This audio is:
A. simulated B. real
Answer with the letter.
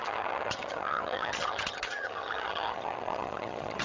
A